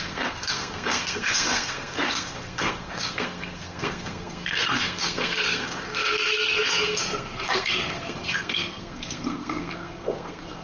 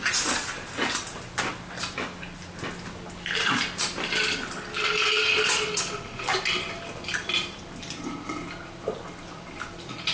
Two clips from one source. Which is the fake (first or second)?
first